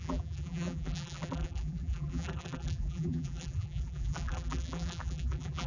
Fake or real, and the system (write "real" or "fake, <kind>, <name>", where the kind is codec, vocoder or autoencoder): fake, vocoder, BigVGAN v2